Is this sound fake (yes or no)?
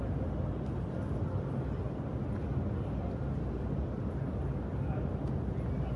no